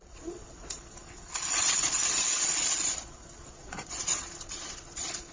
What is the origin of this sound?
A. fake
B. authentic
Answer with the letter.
A